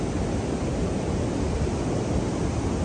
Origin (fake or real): real